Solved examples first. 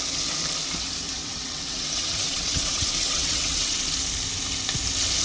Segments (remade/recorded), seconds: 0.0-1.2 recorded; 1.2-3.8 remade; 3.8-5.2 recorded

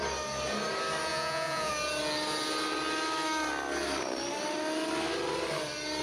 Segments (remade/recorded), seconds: 0.0-1.1 recorded; 1.1-1.7 remade; 1.7-6.0 recorded

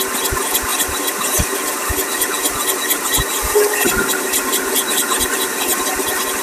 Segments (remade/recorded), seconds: 0.0-6.4 recorded

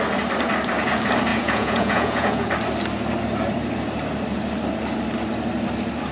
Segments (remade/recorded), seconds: 0.0-1.3 recorded; 1.3-2.5 remade; 2.5-6.1 recorded